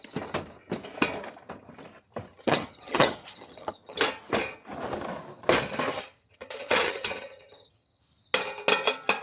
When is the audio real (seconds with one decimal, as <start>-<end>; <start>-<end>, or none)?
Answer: 0.0-2.3; 4.0-5.9; 8.0-9.2